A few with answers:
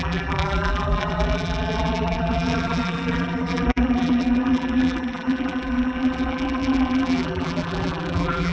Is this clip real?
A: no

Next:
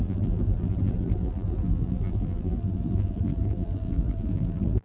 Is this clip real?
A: no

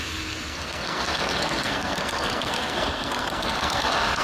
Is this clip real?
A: no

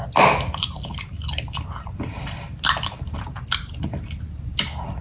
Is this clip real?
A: yes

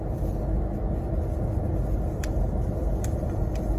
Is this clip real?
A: yes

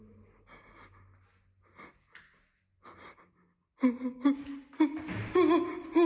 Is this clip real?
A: yes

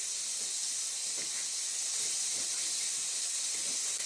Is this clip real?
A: yes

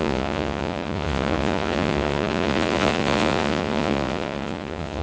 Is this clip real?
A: no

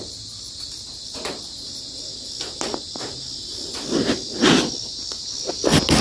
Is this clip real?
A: yes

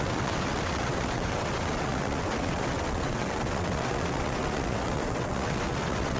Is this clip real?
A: no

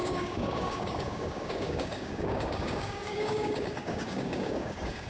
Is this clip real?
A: no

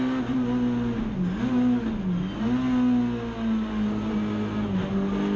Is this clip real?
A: yes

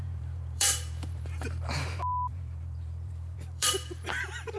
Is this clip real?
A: no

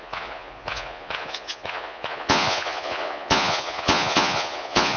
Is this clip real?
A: no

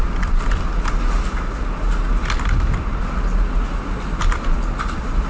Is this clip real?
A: yes